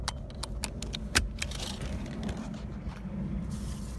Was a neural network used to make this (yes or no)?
no